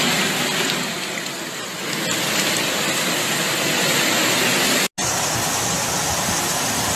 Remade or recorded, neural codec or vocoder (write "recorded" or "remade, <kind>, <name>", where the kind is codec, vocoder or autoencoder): recorded